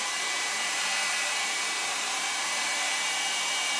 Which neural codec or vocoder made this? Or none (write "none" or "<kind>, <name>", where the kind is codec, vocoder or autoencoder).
vocoder, BigVGAN v2